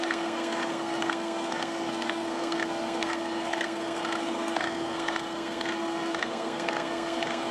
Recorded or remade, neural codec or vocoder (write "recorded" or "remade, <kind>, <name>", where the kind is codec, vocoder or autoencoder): remade, codec, SNAC